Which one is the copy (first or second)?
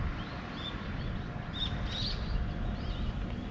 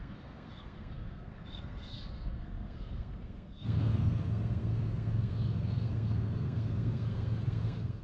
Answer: second